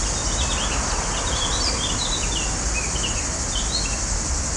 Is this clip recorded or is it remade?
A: recorded